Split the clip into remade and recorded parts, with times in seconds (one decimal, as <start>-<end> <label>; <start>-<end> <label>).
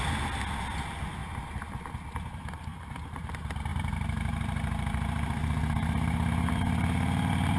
0.0-2.7 recorded; 2.7-3.3 remade; 3.3-3.7 recorded; 3.7-7.6 remade